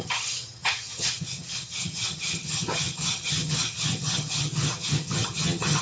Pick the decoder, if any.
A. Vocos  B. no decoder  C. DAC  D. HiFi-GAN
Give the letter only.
D